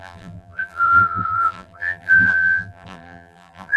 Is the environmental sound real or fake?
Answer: fake